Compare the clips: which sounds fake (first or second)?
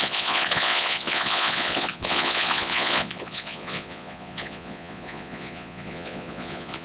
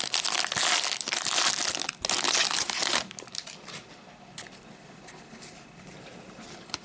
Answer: first